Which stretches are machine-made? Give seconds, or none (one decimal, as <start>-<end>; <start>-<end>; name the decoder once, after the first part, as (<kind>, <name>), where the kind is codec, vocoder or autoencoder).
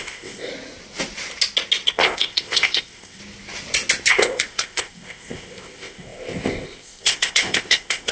0.0-0.5 (codec, ZipCodec); 1.9-3.2; 4.1-8.1